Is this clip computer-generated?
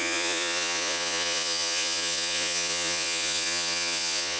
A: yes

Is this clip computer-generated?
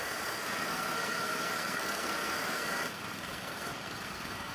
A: yes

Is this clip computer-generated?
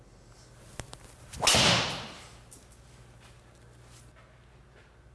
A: no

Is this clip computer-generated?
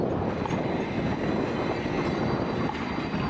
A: no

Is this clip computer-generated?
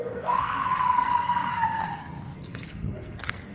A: yes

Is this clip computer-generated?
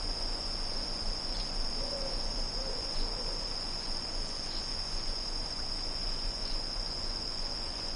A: yes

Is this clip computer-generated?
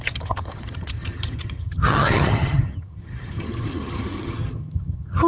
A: yes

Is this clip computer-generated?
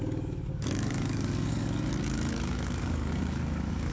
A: yes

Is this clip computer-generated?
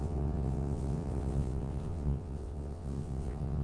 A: yes